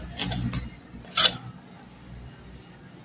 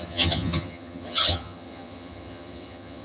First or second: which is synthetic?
second